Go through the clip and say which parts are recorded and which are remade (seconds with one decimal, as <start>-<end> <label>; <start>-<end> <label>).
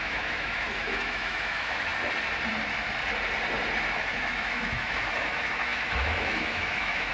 0.0-1.9 remade; 1.9-4.0 recorded; 4.0-7.1 remade